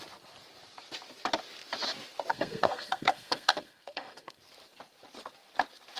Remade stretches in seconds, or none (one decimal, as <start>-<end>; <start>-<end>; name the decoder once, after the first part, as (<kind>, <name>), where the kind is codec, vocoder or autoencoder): 2.3-4.4 (codec, SNAC)